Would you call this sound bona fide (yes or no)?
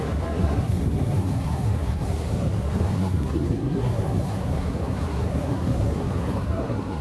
no